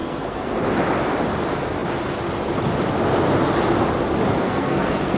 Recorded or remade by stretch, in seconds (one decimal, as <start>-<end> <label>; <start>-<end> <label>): 0.0-0.6 remade; 0.6-4.4 recorded; 4.4-5.2 remade